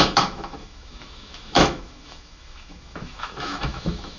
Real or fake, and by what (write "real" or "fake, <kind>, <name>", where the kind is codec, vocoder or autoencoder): fake, autoencoder, DAC-VAE